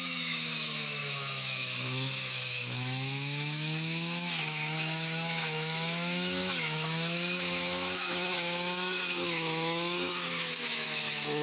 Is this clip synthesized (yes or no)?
yes